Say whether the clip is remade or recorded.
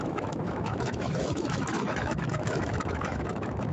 remade